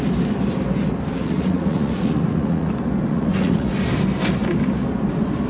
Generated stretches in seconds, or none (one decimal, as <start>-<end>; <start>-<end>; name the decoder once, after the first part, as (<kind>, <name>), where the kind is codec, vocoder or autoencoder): 1.2-2.7 (vocoder, Vocos); 3.1-3.7